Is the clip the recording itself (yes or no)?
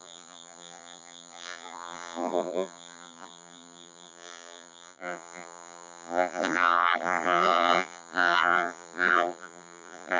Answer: no